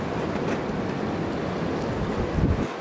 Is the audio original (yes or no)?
yes